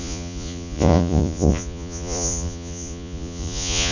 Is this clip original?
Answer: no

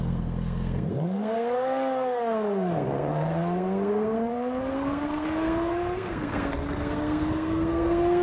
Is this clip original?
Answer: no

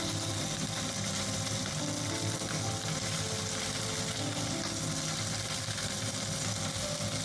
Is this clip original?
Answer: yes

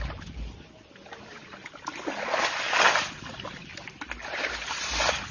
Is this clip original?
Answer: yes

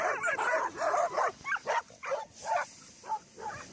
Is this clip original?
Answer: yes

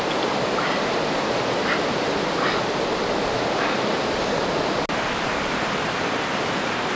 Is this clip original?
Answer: yes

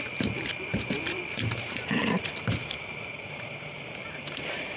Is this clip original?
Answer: no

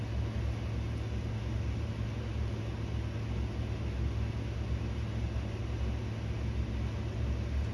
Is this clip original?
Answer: yes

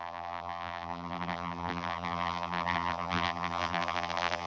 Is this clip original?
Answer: no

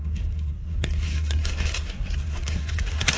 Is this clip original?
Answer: no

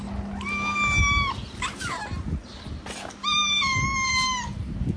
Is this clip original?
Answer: yes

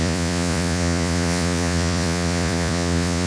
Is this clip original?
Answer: no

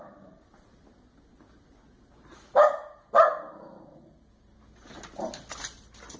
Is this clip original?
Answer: yes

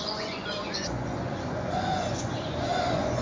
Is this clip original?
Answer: no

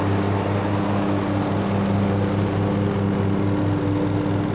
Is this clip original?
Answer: yes